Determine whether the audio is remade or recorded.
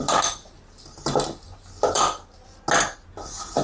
recorded